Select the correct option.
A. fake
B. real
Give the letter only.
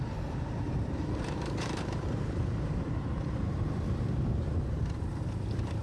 A